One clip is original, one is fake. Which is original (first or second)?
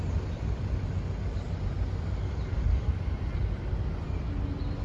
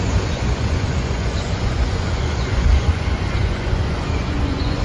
first